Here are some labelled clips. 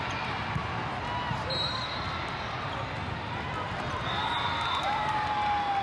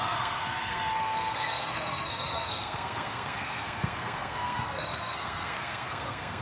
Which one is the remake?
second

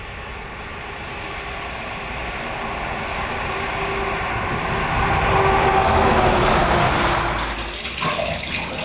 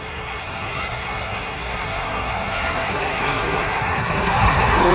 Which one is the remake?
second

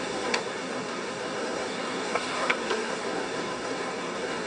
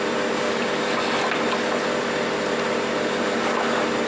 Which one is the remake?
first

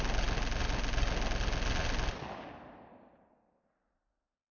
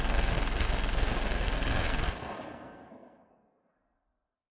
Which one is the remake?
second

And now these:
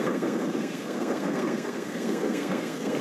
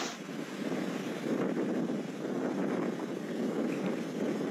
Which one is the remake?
first